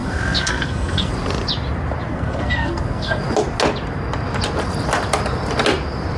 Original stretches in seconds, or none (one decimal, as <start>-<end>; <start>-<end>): 1.1-2.1; 3.2-6.2